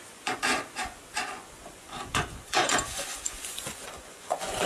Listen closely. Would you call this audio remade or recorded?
remade